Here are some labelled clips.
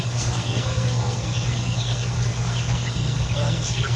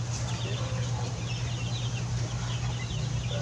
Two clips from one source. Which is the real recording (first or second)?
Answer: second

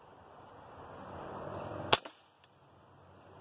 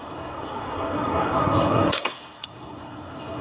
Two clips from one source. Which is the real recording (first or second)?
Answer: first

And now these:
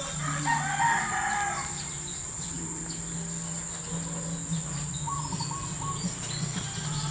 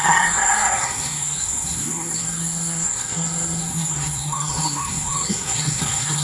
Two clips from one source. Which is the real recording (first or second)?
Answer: first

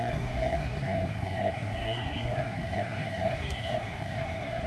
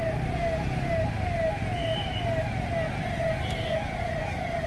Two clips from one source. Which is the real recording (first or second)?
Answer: second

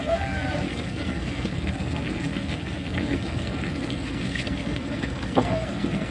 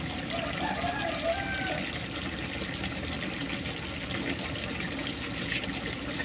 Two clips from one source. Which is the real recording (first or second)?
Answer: second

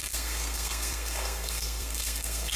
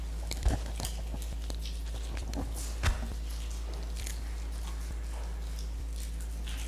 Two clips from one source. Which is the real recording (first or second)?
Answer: second